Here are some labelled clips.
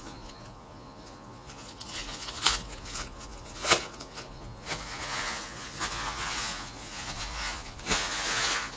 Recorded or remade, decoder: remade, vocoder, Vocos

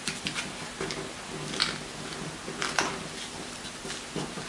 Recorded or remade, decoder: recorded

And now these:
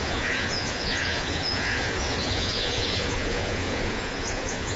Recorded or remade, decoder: remade, vocoder, Vocos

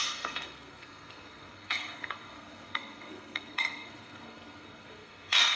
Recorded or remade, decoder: remade, codec, SNAC